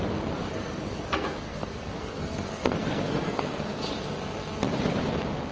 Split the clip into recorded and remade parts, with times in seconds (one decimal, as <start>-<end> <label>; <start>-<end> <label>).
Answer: 0.0-0.5 recorded; 0.5-3.8 remade; 3.8-5.5 recorded